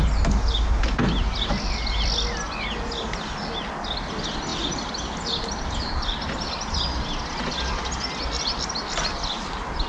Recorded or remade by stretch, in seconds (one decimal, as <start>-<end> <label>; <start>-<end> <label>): 0.0-9.9 recorded